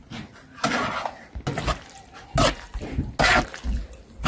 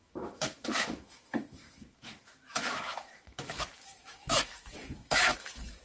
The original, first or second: first